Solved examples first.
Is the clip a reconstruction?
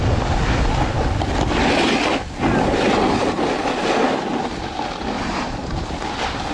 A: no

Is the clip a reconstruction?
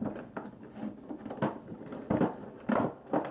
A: no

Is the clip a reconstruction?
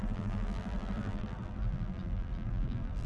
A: yes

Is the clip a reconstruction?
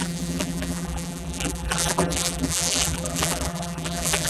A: yes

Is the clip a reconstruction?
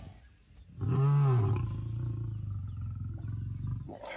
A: no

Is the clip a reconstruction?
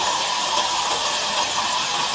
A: no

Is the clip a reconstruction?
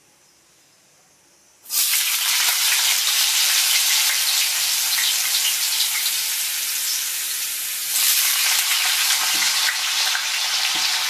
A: yes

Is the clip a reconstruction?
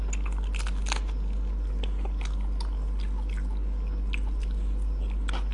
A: no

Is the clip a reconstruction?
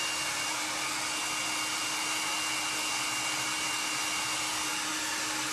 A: no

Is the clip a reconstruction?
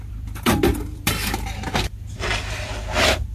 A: yes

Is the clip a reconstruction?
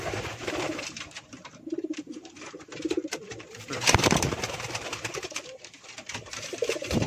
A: yes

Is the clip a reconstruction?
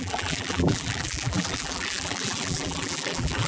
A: yes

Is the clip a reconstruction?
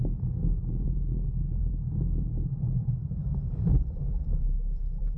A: yes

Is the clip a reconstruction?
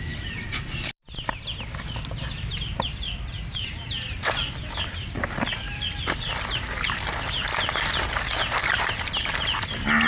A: no